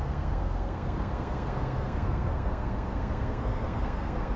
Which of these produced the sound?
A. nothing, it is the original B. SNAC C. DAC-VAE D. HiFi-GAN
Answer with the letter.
B